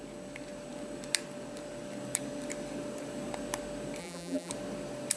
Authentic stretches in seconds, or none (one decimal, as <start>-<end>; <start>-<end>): 0.0-4.0; 4.5-5.2